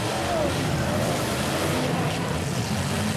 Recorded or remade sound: recorded